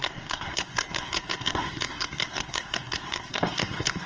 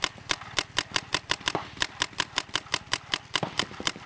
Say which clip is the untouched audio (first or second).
second